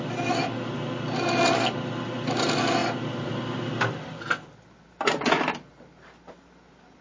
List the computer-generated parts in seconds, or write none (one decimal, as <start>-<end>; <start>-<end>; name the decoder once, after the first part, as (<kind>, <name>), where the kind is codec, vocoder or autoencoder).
none